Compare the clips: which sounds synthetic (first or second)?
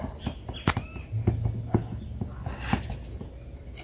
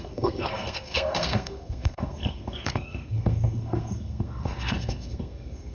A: second